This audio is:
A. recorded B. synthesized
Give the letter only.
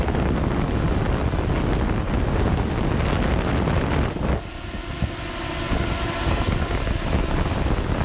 A